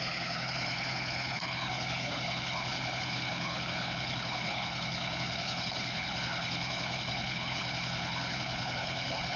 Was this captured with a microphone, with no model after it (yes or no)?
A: no